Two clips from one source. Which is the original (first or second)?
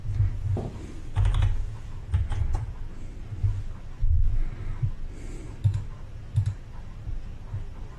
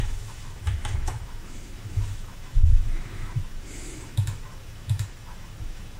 first